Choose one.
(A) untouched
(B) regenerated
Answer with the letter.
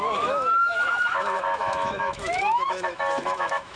B